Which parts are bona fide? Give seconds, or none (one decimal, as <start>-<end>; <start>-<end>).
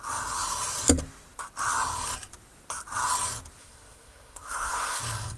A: 0.0-3.6; 5.0-5.4